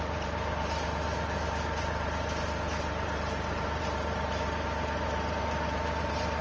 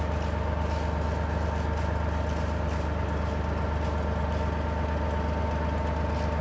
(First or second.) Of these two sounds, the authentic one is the second